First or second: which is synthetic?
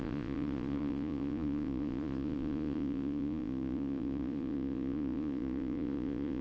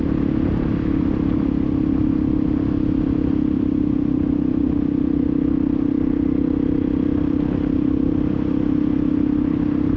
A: first